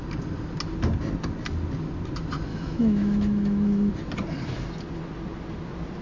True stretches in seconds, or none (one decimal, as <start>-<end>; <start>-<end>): 0.0-2.5; 3.9-6.0